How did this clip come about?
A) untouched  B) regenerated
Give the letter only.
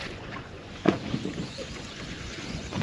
B